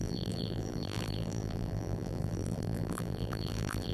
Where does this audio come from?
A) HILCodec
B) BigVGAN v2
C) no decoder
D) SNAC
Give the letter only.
B